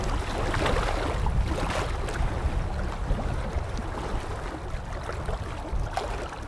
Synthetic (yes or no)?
no